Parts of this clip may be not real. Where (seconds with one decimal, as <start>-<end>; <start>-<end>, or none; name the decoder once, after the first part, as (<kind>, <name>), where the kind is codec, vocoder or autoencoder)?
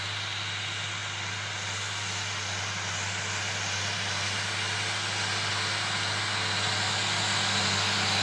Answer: none